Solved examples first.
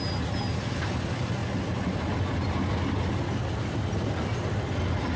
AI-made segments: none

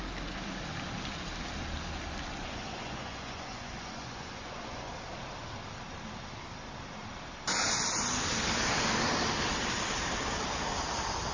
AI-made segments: 2.4-4.9 (vocoder, Vocos)

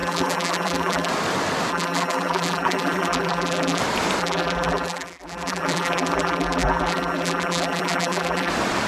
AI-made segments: 0.0-1.1 (vocoder, BigVGAN v2); 1.7-3.8; 4.2-8.5

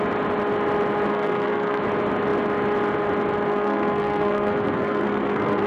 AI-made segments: 1.1-1.8 (codec, SNAC); 3.5-5.7

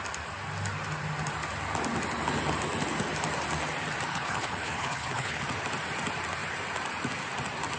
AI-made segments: 4.1-5.4 (codec, HILCodec)